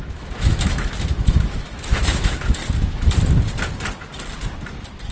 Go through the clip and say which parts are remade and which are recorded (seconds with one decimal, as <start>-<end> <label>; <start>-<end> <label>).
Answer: 0.0-2.6 remade; 2.6-5.1 recorded